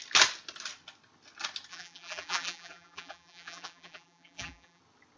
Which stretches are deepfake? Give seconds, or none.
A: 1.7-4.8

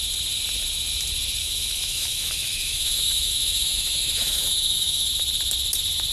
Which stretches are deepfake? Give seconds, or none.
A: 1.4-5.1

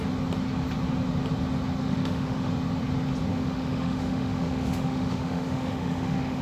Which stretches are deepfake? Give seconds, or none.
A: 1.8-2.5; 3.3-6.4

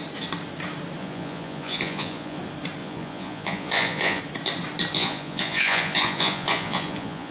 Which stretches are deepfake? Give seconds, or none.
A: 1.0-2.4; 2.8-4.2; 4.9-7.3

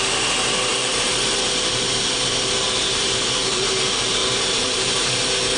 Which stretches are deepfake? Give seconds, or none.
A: 0.7-3.7; 4.2-4.9

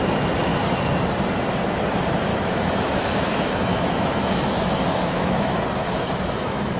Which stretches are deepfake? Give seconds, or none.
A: 2.3-6.8

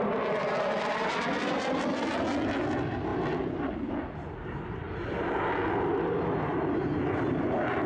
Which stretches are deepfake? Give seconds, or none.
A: 3.1-3.9

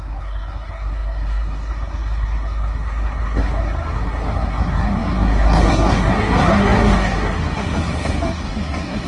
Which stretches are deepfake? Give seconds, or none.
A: 0.0-9.1